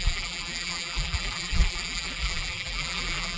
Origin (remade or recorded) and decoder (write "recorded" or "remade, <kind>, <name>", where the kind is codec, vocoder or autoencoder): remade, vocoder, BigVGAN v2